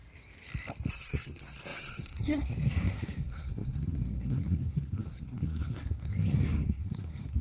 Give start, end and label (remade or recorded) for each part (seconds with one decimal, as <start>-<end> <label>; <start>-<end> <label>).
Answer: 0.0-0.9 recorded; 0.9-7.4 remade